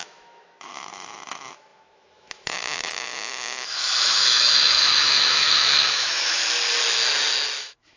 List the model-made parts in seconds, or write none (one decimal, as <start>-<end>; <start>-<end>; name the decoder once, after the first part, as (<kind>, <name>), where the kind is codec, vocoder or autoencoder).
0.0-6.4 (autoencoder, DAC-VAE); 7.6-8.0